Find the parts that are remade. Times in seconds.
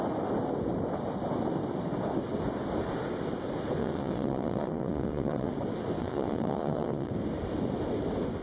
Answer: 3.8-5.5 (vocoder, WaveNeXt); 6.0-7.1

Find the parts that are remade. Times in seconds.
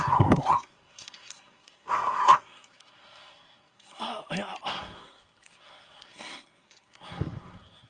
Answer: 0.0-4.1 (codec, SNAC); 4.7-7.9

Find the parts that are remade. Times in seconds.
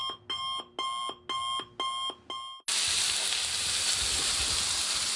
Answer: none